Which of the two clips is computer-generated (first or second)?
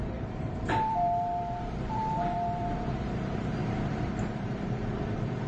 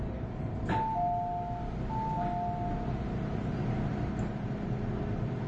first